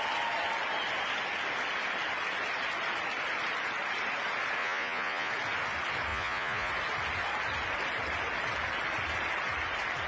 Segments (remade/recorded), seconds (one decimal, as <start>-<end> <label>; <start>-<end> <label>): 0.0-4.6 recorded; 4.6-5.3 remade; 5.3-6.1 recorded; 6.1-6.7 remade; 6.7-10.1 recorded

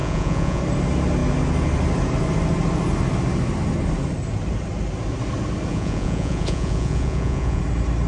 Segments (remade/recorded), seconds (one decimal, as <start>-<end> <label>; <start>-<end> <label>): 0.0-0.6 remade; 0.6-5.7 recorded; 5.7-7.6 remade; 7.6-8.1 recorded

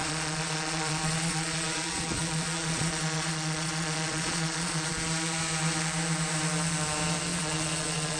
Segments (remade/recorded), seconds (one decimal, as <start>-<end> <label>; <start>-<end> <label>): 0.0-4.9 remade; 4.9-7.3 recorded; 7.3-8.2 remade

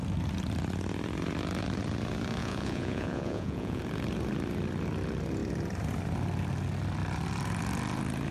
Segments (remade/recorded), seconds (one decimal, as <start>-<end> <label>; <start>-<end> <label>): 0.0-2.4 recorded; 2.4-3.8 remade; 3.8-8.3 recorded

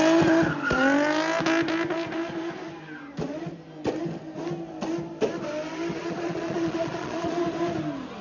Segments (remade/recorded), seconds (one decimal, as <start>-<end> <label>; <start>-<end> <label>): 0.0-6.0 recorded; 6.0-7.4 remade; 7.4-8.2 recorded

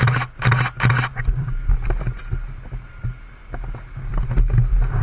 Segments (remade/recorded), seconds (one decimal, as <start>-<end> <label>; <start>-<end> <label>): 0.0-5.0 recorded

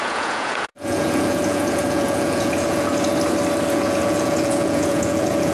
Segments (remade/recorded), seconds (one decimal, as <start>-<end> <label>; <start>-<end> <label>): 0.0-3.1 remade; 3.1-3.7 recorded; 3.7-5.5 remade